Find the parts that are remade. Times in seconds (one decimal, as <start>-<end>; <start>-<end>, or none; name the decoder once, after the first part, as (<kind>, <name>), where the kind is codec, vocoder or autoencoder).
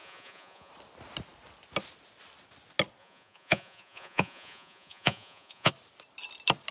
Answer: 0.0-0.7 (vocoder, Vocos); 3.0-5.7